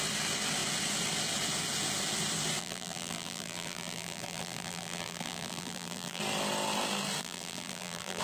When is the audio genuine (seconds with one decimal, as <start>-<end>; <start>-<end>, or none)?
0.0-2.6; 6.2-7.2